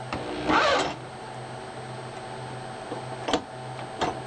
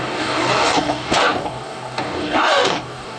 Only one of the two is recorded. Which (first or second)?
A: first